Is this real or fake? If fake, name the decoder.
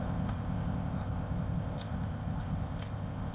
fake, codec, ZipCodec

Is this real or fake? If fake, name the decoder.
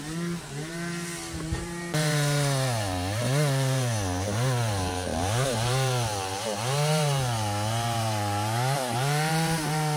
fake, vocoder, BigVGAN v2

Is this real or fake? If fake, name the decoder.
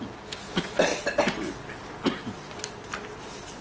real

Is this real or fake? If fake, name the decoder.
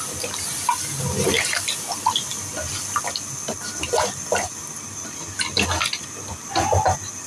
real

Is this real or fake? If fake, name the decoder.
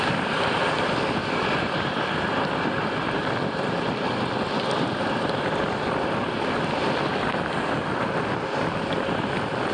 real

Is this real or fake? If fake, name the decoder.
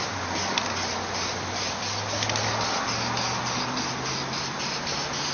real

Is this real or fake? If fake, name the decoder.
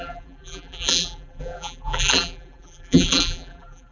fake, vocoder, BigVGAN v2